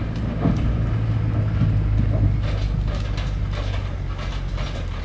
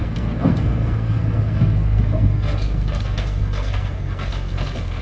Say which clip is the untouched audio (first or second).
first